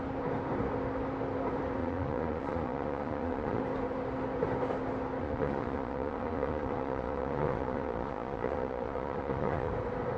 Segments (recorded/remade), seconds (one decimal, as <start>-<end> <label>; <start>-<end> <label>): 0.0-1.8 recorded; 1.8-3.6 remade; 3.6-5.2 recorded; 5.2-9.7 remade; 9.7-10.2 recorded